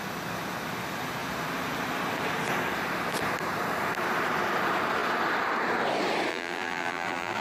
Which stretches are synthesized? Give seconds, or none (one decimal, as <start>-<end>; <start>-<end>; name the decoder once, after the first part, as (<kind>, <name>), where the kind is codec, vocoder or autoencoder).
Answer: 6.3-7.4 (vocoder, BigVGAN v2)